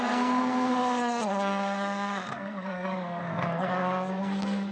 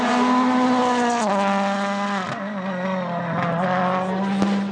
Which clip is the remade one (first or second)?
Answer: first